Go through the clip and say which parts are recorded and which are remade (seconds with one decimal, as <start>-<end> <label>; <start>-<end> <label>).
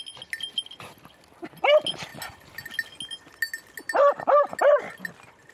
0.0-5.5 recorded